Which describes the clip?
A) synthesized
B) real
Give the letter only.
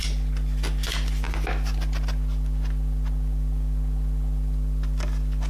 B